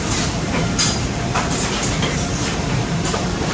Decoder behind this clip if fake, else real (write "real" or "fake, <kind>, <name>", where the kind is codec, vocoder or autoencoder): fake, vocoder, BigVGAN v2